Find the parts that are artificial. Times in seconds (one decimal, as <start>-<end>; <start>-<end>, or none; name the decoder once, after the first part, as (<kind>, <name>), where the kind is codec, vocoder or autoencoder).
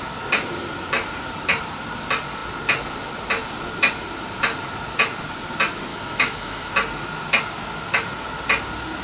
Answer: 5.9-6.7 (autoencoder, DAC-VAE)